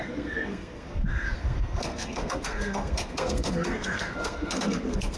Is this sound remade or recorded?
remade